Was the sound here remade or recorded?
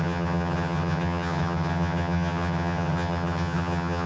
remade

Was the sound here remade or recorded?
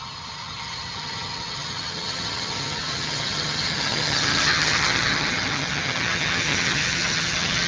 remade